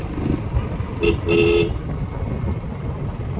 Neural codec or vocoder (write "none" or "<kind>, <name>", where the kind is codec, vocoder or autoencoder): none